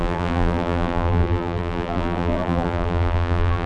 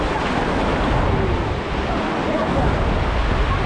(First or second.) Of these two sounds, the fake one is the first